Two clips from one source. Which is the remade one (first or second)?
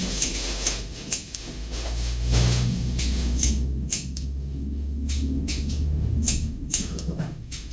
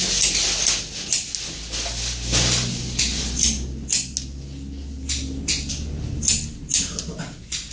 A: first